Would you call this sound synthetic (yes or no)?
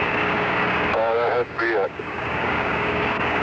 yes